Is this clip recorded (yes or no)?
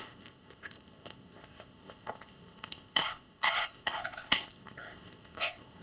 no